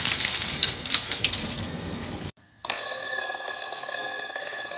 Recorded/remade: remade